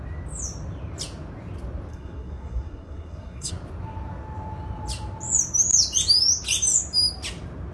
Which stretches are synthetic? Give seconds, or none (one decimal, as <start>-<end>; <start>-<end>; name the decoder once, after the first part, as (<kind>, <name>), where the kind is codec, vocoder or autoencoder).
1.9-3.5 (codec, SNAC)